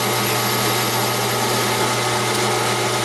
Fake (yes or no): no